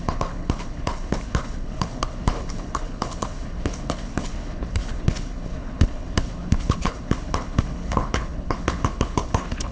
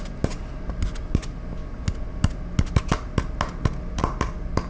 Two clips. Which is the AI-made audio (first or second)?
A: first